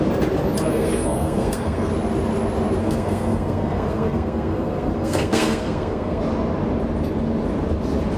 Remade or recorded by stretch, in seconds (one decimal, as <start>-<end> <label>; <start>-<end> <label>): 0.0-0.7 recorded; 0.7-1.9 remade; 1.9-2.8 recorded; 2.8-6.2 remade; 6.2-8.2 recorded